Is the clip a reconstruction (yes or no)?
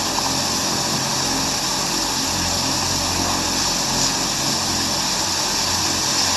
no